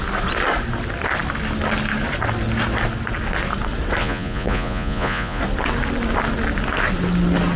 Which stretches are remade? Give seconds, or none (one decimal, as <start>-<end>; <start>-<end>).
4.0-5.4